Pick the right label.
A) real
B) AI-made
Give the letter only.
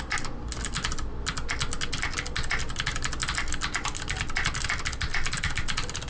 A